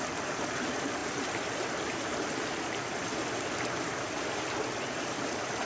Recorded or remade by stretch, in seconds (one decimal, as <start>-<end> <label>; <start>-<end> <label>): 0.0-5.7 recorded